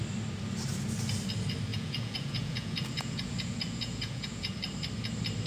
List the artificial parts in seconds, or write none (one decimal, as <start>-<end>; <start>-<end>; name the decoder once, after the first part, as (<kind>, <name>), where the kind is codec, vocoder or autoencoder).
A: 1.7-4.5 (vocoder, Vocos)